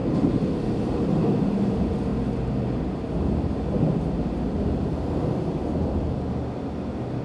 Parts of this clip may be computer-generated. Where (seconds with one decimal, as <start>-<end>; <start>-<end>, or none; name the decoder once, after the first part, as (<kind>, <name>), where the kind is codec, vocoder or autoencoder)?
0.0-1.7 (vocoder, BigVGAN v2)